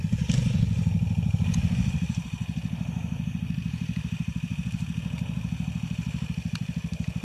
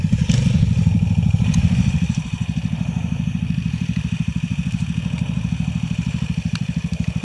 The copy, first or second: second